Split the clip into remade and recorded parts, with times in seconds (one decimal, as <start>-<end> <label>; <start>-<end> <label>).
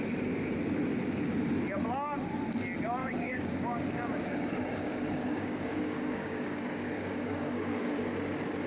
0.0-3.0 recorded; 3.0-7.9 remade; 7.9-8.7 recorded